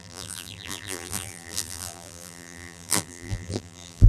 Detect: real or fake fake